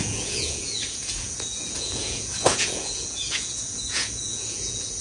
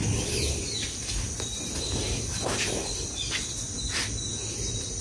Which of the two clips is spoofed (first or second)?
first